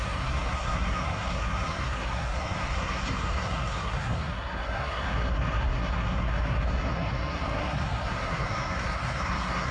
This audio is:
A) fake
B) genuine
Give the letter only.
A